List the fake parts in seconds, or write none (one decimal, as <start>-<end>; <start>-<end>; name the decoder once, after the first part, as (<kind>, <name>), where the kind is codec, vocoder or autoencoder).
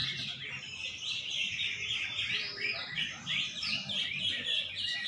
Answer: 0.0-0.5 (vocoder, BigVGAN v2); 1.4-4.3